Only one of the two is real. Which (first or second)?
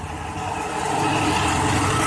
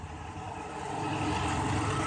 first